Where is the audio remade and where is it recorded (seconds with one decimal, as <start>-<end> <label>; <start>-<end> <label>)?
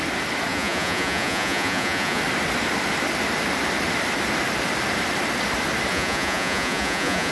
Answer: 0.0-0.5 recorded; 0.5-2.2 remade; 2.2-5.9 recorded; 5.9-7.3 remade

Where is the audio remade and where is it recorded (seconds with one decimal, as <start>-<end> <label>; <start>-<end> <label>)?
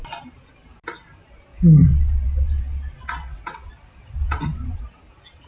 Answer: 0.0-1.5 recorded; 1.5-4.8 remade; 4.8-5.5 recorded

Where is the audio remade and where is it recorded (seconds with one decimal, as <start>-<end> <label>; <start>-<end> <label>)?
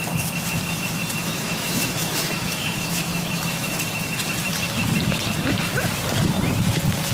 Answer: 0.0-1.2 recorded; 1.2-3.8 remade; 3.8-7.1 recorded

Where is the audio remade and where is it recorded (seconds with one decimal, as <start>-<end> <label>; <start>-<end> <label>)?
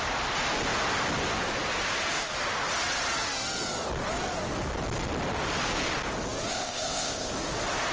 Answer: 0.0-6.5 recorded; 6.5-7.3 remade; 7.3-7.9 recorded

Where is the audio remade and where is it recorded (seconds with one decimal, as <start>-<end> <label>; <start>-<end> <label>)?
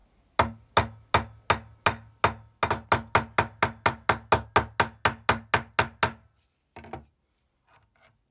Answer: 0.0-8.3 recorded